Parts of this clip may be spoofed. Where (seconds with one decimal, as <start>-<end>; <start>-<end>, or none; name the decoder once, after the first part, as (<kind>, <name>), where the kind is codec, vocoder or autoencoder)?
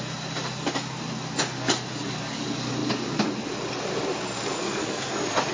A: 4.6-5.1 (codec, SNAC)